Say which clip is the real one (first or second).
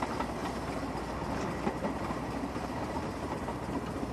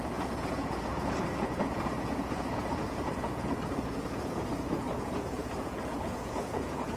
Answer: first